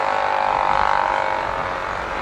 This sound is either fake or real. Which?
real